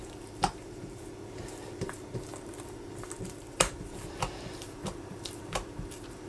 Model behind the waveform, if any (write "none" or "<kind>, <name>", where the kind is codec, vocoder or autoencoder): vocoder, BigVGAN v2